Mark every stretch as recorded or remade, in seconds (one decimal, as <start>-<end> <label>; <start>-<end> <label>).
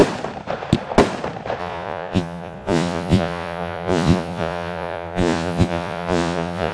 0.0-1.6 recorded; 1.6-6.7 remade